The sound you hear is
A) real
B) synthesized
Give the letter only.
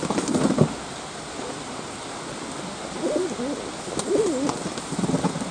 A